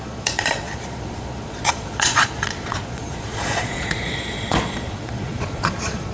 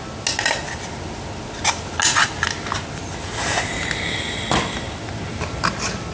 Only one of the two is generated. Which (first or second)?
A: first